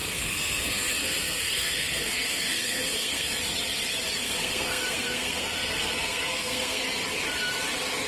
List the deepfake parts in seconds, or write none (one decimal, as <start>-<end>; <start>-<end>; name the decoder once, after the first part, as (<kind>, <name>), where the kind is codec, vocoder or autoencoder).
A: 0.0-3.3 (codec, SNAC); 4.2-6.8